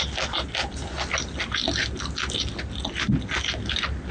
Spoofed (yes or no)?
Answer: no